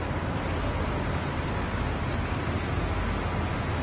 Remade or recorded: recorded